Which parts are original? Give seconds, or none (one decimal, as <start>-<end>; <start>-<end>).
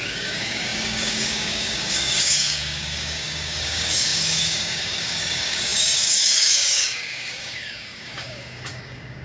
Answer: none